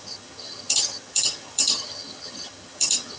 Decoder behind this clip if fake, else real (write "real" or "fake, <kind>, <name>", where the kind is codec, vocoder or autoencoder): fake, vocoder, HiFi-GAN